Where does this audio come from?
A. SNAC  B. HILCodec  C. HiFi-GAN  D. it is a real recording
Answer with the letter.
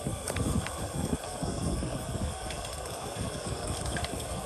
A